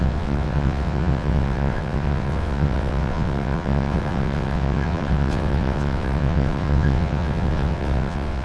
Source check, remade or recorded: remade